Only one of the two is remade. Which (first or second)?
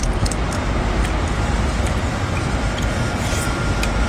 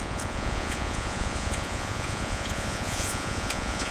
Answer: second